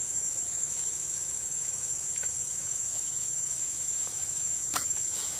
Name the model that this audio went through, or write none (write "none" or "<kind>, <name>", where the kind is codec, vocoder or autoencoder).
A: autoencoder, DAC-VAE